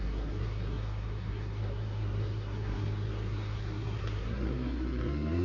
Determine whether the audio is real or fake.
fake